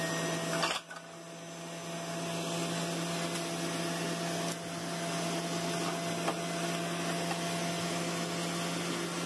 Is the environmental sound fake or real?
real